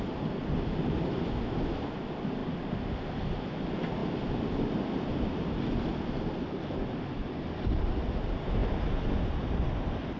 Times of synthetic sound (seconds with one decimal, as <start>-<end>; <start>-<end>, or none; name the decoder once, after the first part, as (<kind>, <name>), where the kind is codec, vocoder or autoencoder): none